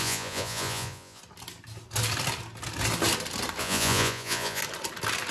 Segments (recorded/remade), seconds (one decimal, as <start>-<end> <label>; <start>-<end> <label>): 0.0-1.2 remade; 1.2-3.6 recorded; 3.6-4.6 remade; 4.6-5.3 recorded